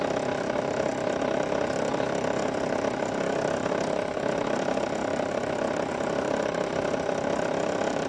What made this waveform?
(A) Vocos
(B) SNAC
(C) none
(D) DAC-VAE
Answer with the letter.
C